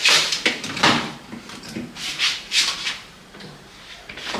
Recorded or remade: remade